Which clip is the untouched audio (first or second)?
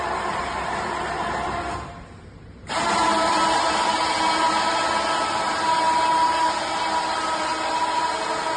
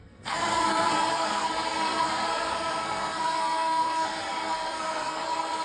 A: first